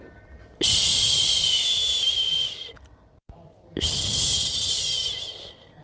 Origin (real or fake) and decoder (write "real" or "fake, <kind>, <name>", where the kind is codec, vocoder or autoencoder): fake, vocoder, BigVGAN v2